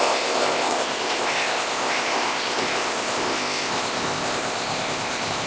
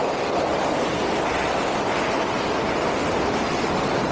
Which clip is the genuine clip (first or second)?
second